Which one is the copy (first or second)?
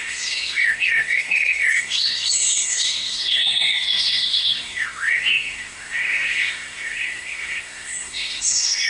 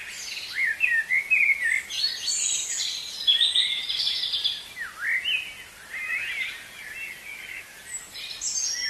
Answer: first